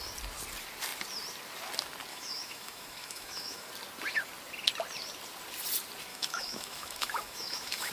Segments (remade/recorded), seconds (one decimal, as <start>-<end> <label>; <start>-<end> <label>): 0.0-2.1 recorded; 2.1-3.7 remade; 3.7-6.1 recorded; 6.1-7.9 remade